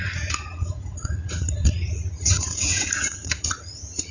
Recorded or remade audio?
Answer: remade